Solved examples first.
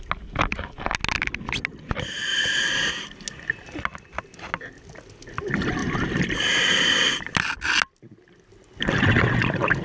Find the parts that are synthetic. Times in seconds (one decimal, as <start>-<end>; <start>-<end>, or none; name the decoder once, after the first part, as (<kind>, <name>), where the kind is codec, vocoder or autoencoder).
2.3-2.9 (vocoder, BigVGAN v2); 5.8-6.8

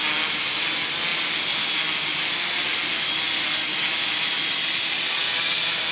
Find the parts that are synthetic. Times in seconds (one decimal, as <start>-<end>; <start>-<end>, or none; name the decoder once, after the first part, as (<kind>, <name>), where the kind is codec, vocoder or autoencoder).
none

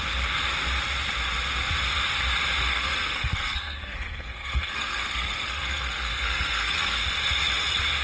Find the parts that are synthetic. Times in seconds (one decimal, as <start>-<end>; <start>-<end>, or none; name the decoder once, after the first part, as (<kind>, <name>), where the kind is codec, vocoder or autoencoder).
2.7-7.0 (codec, SNAC)

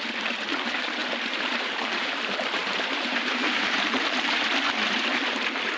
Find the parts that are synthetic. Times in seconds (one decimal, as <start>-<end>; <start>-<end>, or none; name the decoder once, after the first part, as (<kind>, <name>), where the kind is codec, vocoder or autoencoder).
1.0-4.4 (vocoder, BigVGAN v2)

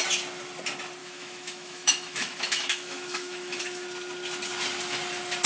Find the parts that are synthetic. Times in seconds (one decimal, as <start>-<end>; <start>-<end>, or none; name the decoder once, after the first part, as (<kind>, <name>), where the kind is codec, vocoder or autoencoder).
1.0-3.6 (autoencoder, DAC-VAE)